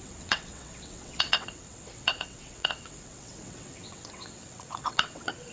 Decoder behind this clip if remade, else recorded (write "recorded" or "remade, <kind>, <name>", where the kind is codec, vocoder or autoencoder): remade, vocoder, WaveNeXt